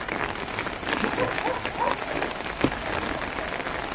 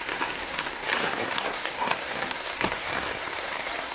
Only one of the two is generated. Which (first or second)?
second